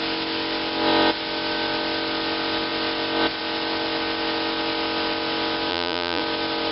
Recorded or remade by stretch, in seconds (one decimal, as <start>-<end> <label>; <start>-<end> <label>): 0.0-5.7 recorded; 5.7-6.2 remade; 6.2-6.7 recorded